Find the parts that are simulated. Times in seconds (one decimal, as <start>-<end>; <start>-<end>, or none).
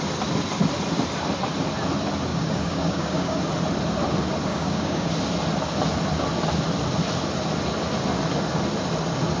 2.3-3.4; 4.5-5.1